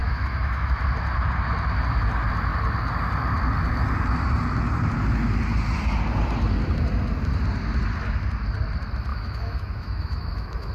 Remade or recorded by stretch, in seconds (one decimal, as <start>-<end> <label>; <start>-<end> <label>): 0.0-0.8 remade; 0.8-9.1 recorded; 9.1-10.7 remade